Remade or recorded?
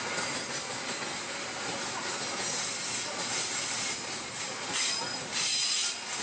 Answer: recorded